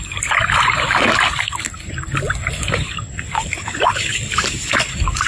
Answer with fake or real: real